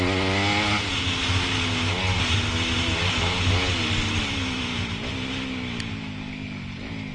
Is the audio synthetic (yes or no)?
no